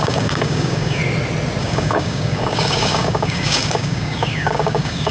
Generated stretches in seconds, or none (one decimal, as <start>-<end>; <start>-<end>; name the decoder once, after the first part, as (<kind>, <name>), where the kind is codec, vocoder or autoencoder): 0.0-1.0 (codec, DAC); 1.6-5.1